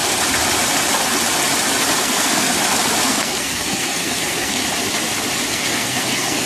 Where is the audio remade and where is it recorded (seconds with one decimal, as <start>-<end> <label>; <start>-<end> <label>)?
0.0-2.0 recorded; 2.0-2.5 remade; 2.5-3.1 recorded; 3.1-4.6 remade; 4.6-5.5 recorded; 5.5-6.5 remade